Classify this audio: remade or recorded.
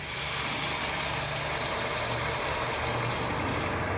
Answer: recorded